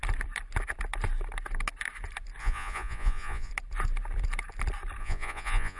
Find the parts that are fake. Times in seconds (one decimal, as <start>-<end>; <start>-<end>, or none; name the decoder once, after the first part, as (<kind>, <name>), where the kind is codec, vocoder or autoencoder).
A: 2.4-3.5 (vocoder, Vocos); 5.0-5.8